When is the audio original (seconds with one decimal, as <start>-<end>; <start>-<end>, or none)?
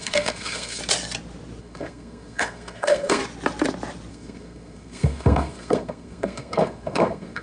0.8-1.6; 3.2-4.1